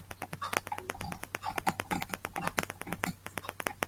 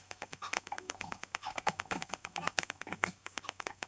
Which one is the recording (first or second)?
first